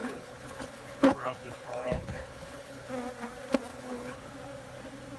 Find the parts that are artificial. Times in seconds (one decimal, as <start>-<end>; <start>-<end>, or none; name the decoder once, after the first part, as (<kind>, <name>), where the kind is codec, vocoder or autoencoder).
0.0-2.9 (codec, HILCodec); 3.7-4.3